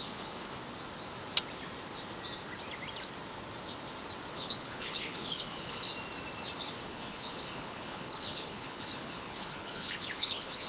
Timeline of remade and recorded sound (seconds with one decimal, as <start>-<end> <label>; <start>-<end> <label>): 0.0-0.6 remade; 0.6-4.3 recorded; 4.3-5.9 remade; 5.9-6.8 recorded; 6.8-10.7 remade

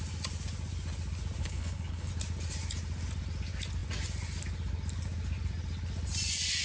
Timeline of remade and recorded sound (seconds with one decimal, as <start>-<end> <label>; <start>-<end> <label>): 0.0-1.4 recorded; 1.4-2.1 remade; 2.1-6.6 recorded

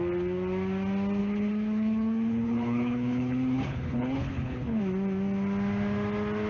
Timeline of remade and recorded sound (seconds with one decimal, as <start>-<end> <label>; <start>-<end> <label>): 0.0-1.2 recorded; 1.2-4.8 remade; 4.8-6.5 recorded

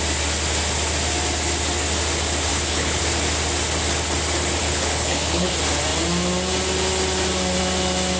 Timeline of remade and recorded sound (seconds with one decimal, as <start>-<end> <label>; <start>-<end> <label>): 0.0-2.5 recorded; 2.5-3.0 remade; 3.0-4.6 recorded; 4.6-5.5 remade; 5.5-8.2 recorded

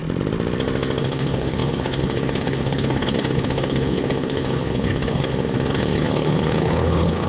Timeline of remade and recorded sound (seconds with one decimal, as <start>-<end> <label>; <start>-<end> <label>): 0.0-1.0 recorded; 1.0-7.3 remade